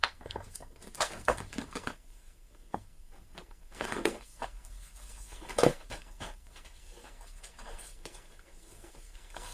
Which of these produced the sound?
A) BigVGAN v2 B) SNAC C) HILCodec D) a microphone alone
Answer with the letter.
B